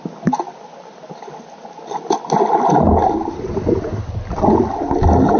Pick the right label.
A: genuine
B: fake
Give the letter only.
A